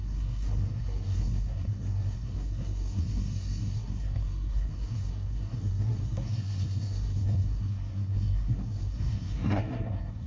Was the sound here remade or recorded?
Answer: remade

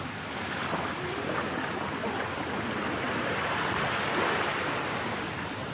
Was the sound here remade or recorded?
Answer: recorded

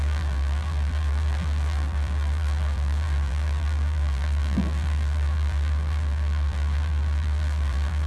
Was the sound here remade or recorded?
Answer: remade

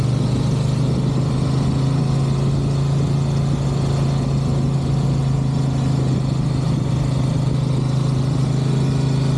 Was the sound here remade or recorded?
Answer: recorded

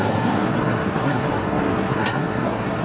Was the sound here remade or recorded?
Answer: remade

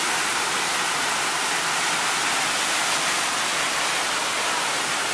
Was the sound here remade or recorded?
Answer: recorded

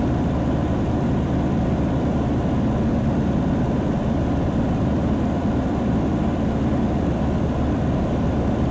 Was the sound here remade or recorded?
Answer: remade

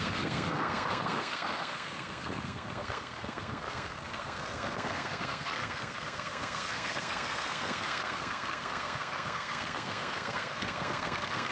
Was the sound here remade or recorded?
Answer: remade